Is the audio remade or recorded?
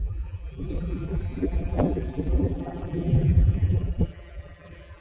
remade